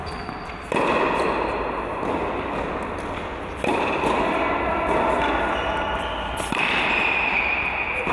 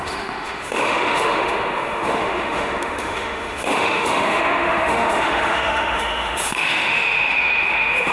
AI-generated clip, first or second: second